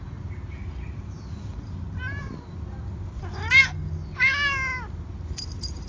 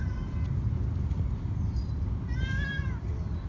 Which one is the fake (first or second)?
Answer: second